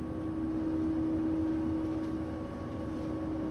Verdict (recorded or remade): recorded